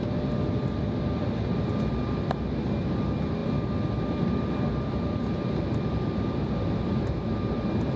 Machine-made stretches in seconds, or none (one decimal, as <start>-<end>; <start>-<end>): none